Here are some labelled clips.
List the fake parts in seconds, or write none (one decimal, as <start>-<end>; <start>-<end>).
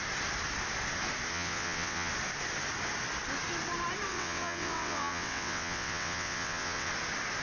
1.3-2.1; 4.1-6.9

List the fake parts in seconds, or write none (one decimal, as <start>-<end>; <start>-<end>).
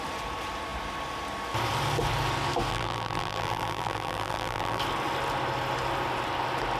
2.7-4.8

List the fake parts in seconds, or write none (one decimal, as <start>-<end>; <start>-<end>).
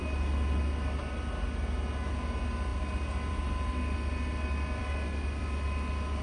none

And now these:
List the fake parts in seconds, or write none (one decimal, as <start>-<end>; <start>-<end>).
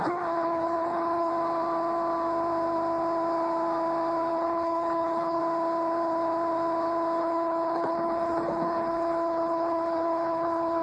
0.0-1.3; 4.3-5.4; 7.2-10.8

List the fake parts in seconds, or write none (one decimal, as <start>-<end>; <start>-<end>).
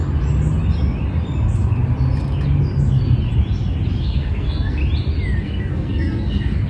4.0-4.8; 5.4-6.7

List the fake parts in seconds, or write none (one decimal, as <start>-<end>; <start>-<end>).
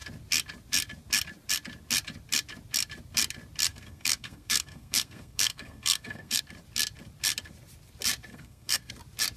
3.7-6.4; 8.3-8.9